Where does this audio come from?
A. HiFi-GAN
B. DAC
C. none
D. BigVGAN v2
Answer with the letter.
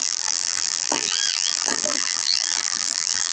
D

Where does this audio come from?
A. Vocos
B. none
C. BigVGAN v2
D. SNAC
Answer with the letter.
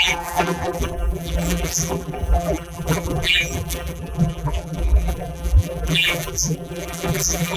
C